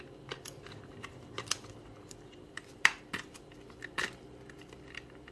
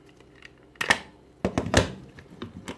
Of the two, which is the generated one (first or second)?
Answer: first